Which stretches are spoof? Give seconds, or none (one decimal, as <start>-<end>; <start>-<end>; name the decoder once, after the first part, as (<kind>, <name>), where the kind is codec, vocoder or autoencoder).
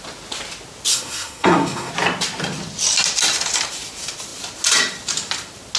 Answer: 0.9-1.9 (codec, SNAC)